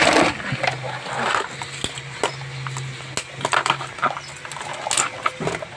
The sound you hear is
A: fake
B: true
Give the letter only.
B